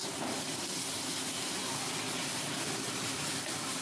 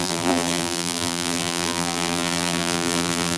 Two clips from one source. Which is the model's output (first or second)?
second